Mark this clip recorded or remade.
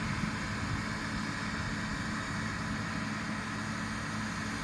recorded